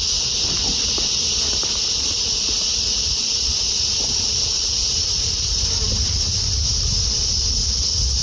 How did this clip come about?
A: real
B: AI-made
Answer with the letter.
B